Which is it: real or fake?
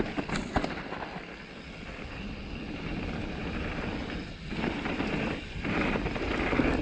real